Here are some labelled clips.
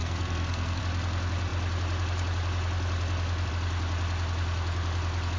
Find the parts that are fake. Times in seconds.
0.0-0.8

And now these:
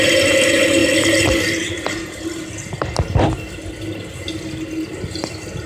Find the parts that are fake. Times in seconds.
none

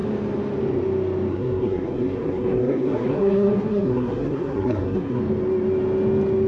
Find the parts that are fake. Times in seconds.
1.3-5.2

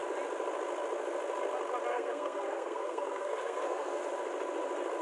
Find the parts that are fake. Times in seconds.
1.9-4.0

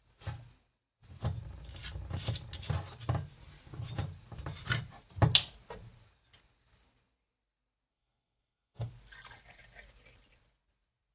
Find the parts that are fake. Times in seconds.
7.9-8.9

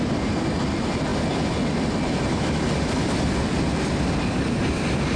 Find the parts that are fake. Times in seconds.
none

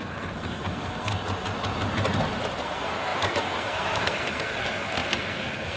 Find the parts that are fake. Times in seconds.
0.0-1.1; 2.6-5.8